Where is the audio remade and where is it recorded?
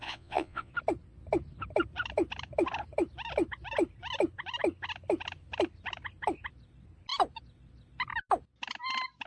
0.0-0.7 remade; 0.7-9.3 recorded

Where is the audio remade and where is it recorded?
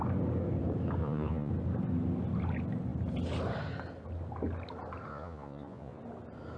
0.0-1.0 recorded; 1.0-1.5 remade; 1.5-5.1 recorded; 5.1-6.0 remade; 6.0-6.6 recorded